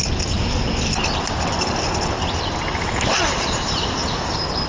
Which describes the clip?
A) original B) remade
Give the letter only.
A